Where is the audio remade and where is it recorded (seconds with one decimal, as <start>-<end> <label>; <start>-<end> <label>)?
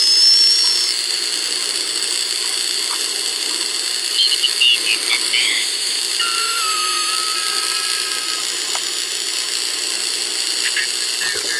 0.0-5.4 recorded; 5.4-6.0 remade; 6.0-6.4 recorded; 6.4-7.1 remade; 7.1-11.6 recorded